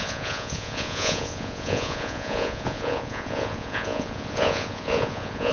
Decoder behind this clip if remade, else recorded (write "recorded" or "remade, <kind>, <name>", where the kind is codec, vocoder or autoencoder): remade, vocoder, Vocos